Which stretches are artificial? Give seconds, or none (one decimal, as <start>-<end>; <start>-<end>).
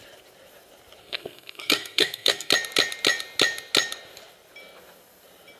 1.0-2.5